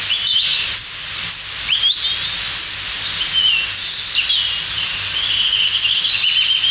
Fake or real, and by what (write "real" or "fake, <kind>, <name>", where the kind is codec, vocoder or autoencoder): real